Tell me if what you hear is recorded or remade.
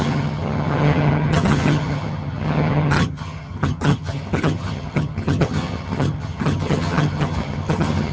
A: remade